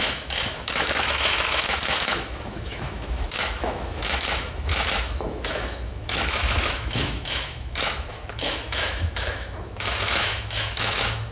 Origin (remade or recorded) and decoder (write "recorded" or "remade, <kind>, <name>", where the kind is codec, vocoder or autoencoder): remade, autoencoder, DAC-VAE